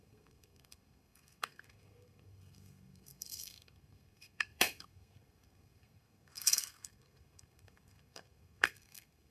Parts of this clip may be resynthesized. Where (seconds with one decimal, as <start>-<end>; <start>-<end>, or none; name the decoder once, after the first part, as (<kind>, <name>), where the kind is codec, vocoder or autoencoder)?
0.0-9.3 (codec, SNAC)